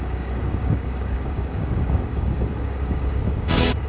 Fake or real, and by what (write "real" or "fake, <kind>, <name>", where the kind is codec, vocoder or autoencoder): fake, codec, DAC